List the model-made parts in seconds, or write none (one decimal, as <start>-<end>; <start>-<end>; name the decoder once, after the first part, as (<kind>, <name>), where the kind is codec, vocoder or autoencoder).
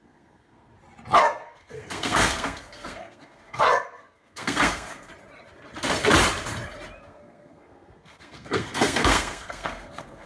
0.0-0.7 (codec, SNAC); 1.2-5.1; 7.0-10.3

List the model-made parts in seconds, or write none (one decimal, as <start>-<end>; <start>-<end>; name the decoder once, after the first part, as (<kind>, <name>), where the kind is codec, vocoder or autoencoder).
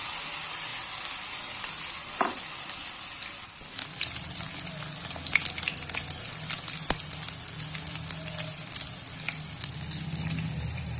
none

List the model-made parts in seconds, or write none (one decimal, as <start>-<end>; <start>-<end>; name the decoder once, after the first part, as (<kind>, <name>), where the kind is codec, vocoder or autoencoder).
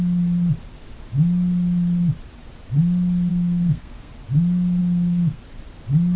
3.3-4.1 (codec, SNAC); 4.8-5.4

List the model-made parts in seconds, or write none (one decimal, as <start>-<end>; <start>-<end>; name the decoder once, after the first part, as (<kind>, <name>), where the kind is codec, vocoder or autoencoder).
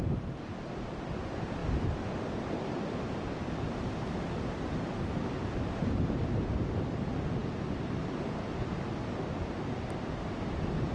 none